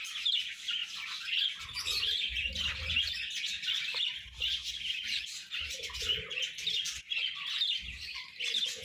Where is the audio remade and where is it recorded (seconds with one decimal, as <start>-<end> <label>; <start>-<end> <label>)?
0.0-8.8 recorded